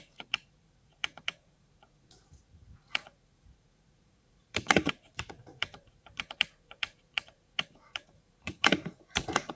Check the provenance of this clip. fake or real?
fake